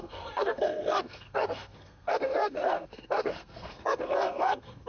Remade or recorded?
remade